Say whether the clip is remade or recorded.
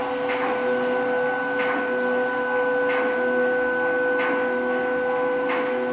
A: recorded